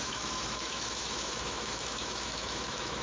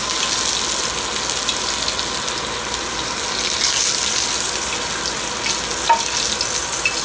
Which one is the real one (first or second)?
second